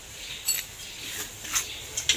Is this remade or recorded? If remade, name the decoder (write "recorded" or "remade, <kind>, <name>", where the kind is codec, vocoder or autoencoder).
recorded